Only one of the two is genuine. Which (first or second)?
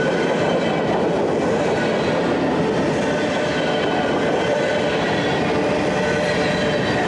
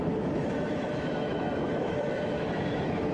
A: first